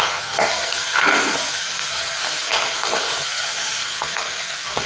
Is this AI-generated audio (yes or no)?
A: yes